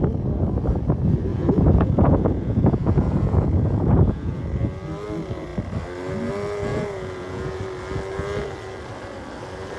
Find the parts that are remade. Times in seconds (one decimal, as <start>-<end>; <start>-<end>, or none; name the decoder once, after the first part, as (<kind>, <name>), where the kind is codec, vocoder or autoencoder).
1.3-4.4 (vocoder, Vocos); 6.7-7.6

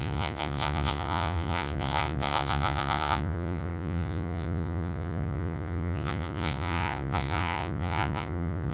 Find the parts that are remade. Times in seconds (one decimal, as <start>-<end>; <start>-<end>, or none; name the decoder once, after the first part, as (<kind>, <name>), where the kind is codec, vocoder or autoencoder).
0.0-8.7 (vocoder, Vocos)

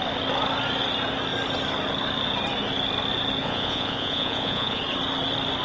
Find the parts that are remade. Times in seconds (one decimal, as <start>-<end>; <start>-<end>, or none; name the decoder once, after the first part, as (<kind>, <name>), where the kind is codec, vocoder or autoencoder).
3.4-4.8 (vocoder, Vocos)

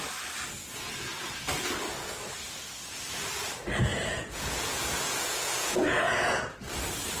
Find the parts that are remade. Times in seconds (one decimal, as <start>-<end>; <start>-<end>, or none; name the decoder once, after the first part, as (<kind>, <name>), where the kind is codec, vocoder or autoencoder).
0.6-1.4 (vocoder, Vocos); 3.9-6.6